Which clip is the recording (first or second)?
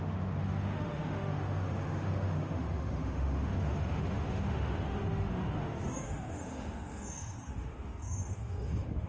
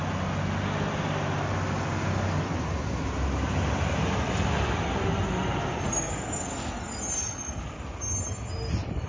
second